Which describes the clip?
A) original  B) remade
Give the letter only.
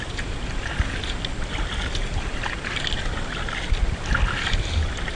A